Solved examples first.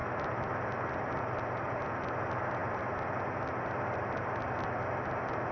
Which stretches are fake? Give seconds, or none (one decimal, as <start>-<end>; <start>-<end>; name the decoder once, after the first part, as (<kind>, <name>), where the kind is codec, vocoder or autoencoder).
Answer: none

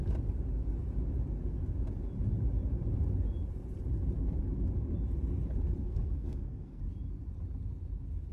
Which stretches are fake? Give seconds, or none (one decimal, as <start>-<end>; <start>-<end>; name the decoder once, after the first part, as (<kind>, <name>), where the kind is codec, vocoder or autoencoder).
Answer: 5.8-6.8 (codec, SNAC)

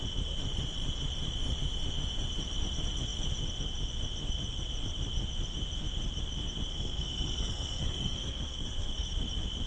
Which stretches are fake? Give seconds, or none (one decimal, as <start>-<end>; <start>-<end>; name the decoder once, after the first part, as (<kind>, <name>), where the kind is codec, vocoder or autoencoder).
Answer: 6.7-9.1 (codec, SNAC)